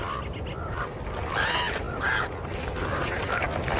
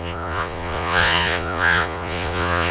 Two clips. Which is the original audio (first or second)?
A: first